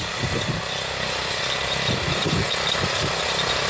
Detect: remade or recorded recorded